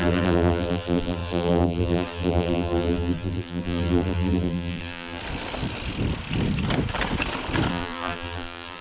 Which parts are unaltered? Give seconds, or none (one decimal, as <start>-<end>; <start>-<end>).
5.2-7.7